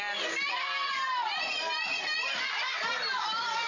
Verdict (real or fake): real